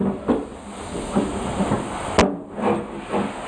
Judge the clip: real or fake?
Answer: real